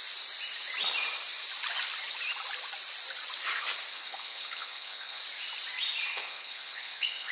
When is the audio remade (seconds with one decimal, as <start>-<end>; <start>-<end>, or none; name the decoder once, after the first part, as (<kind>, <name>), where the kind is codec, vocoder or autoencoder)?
3.9-5.2 (codec, HILCodec); 6.1-7.3